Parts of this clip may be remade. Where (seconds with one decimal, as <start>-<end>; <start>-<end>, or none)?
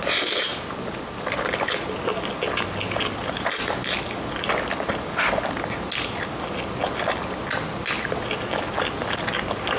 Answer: none